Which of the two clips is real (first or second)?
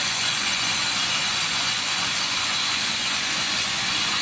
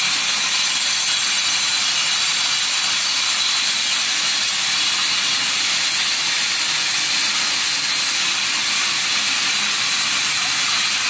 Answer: second